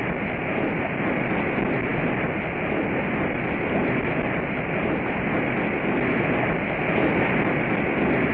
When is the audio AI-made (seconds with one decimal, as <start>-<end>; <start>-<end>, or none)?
none